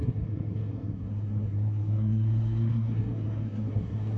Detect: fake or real fake